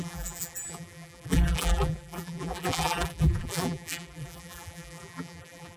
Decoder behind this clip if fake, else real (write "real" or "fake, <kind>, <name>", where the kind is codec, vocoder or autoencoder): fake, vocoder, BigVGAN v2